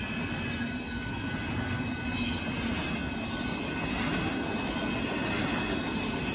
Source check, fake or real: real